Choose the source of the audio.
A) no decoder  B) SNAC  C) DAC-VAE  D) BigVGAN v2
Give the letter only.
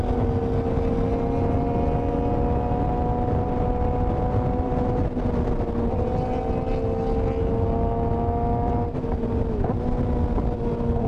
A